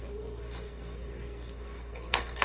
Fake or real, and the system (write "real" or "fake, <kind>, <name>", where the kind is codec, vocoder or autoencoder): fake, codec, SNAC